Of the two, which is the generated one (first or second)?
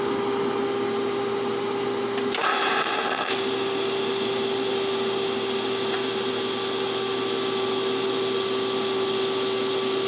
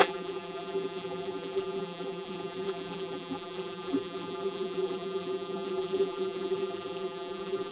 second